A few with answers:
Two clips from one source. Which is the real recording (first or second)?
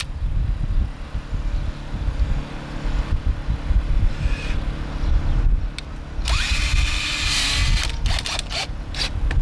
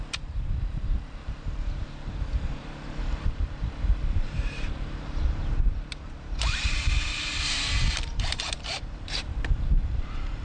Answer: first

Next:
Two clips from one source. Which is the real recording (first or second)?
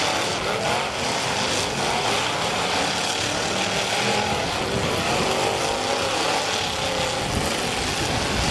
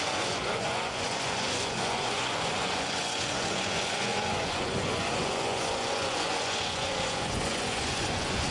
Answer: first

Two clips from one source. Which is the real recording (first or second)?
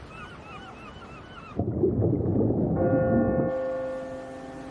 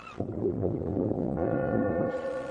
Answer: first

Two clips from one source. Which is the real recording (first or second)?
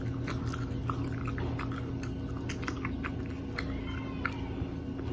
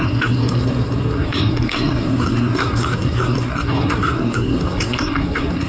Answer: first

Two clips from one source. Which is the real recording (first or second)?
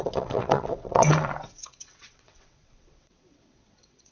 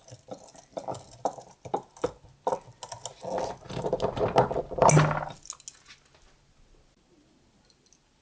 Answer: second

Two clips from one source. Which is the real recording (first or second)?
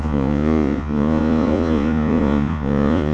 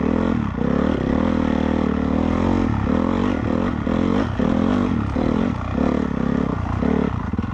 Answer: second